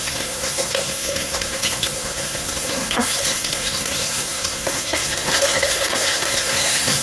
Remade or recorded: remade